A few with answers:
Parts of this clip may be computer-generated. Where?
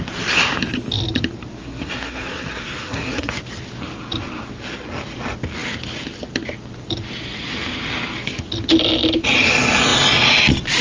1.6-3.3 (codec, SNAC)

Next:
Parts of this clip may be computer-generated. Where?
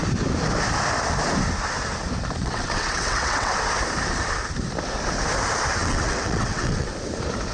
2.4-3.5 (vocoder, WaveNeXt); 5.8-6.9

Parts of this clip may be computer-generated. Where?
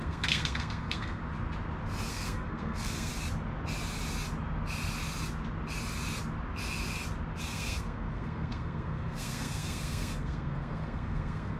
0.0-1.2 (codec, SNAC); 2.1-3.1; 7.4-11.6